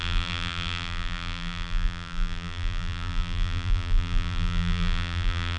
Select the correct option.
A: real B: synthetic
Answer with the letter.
B